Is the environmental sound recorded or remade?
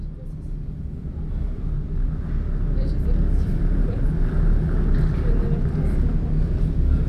recorded